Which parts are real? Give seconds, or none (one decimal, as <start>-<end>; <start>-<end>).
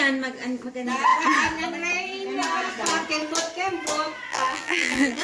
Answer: 0.0-4.3